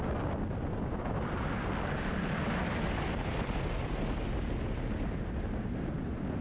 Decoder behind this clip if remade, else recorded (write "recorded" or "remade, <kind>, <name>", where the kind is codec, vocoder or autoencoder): recorded